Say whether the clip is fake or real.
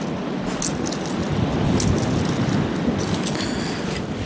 real